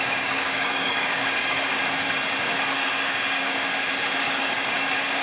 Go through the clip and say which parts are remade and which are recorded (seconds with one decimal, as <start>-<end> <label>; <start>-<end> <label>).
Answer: 0.0-1.8 remade; 1.8-2.4 recorded; 2.4-3.7 remade; 3.7-4.2 recorded; 4.2-5.2 remade